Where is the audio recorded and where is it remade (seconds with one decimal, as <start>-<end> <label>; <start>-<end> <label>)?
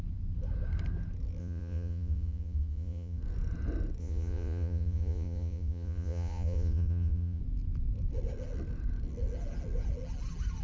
0.0-1.4 recorded; 1.4-3.2 remade; 3.2-4.0 recorded; 4.0-7.4 remade; 7.4-10.6 recorded